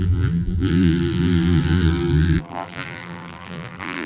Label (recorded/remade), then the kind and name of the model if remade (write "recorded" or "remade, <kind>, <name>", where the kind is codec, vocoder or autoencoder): remade, vocoder, BigVGAN v2